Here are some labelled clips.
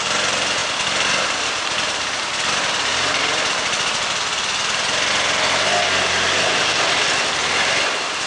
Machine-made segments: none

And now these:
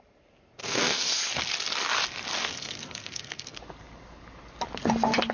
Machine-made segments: 0.6-1.2 (codec, SNAC); 2.4-3.6

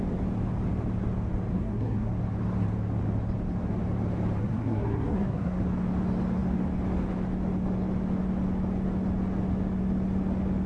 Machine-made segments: 1.5-2.1 (codec, SNAC); 4.4-5.6

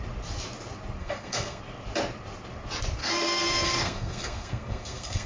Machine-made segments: 1.0-1.6 (codec, SNAC); 3.0-5.3

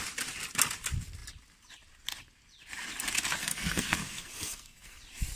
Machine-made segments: 3.4-5.0 (codec, SNAC)

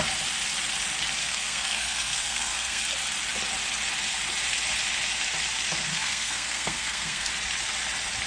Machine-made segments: 1.2-2.8 (codec, SNAC); 5.9-7.3

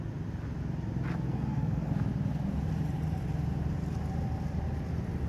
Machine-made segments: 1.3-1.9 (codec, SNAC)

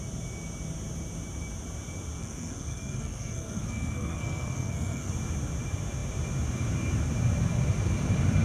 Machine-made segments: 2.2-5.1 (codec, SNAC)